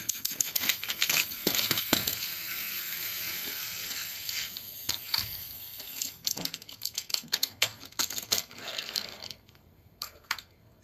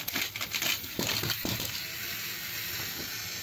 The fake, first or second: first